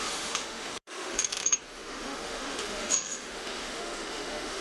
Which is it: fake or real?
fake